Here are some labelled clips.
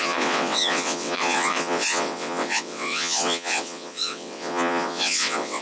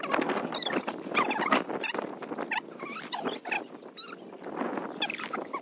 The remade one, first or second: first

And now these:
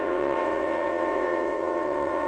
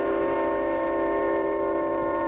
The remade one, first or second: first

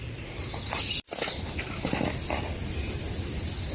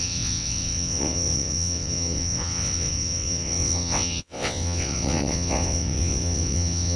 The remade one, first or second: second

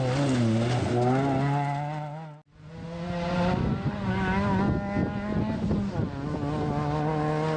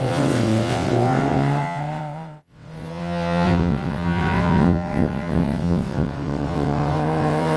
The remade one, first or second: second